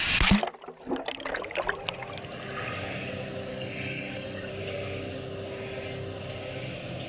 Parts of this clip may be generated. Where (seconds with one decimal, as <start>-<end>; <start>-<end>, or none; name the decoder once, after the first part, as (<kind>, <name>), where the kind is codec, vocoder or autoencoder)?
3.5-4.5 (codec, DAC)